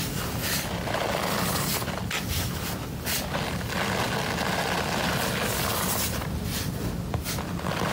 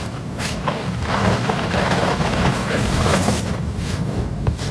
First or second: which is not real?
second